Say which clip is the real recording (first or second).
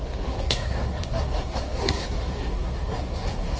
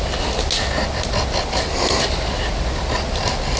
second